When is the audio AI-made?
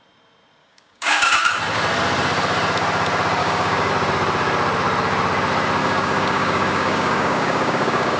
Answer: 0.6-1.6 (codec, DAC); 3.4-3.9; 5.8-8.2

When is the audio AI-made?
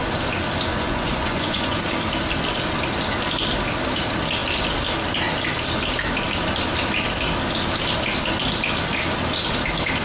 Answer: 0.7-1.8 (vocoder, Vocos)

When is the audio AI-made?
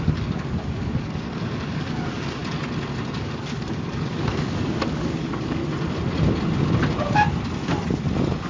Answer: 0.0-2.4 (codec, DAC); 3.2-5.6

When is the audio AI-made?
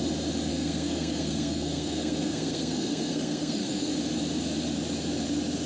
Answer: 0.5-3.9 (codec, SNAC)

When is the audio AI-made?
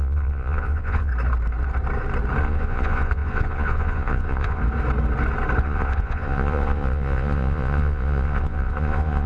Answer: 0.0-1.1 (vocoder, Vocos); 2.4-4.6; 5.6-9.3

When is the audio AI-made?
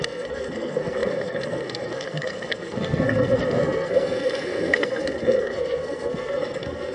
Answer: 0.0-6.9 (codec, SNAC)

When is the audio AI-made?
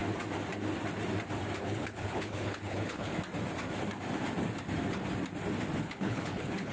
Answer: 1.6-3.1 (codec, HILCodec); 5.8-6.7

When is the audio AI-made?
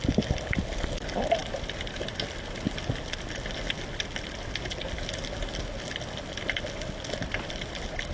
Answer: none